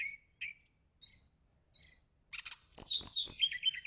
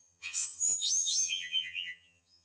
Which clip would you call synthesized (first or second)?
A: second